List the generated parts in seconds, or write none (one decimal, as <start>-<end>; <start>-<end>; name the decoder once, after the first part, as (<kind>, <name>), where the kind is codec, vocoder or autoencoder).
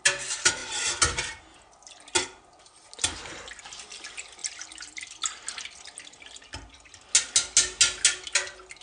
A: none